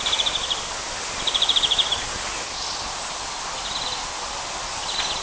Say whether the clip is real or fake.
real